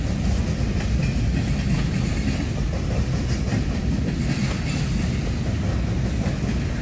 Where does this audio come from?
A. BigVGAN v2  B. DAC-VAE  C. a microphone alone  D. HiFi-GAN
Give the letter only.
C